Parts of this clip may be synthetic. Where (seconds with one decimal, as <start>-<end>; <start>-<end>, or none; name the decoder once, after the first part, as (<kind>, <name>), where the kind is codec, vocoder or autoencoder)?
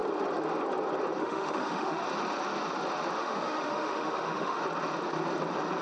1.2-2.0 (autoencoder, DAC-VAE); 3.2-4.6